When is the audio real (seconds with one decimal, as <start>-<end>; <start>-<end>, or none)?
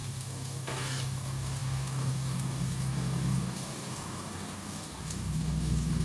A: none